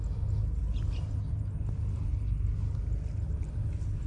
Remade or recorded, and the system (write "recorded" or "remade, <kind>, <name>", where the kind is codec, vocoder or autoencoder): recorded